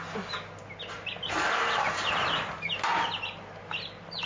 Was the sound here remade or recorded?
recorded